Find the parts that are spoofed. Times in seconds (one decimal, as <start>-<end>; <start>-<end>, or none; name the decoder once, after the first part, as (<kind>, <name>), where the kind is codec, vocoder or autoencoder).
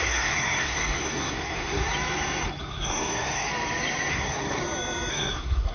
0.0-1.8 (codec, SNAC); 2.6-3.5; 4.1-4.6; 5.1-5.7